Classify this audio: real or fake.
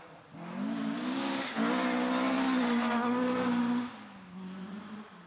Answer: real